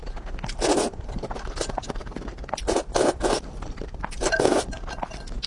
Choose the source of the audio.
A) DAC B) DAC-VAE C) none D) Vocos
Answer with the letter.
C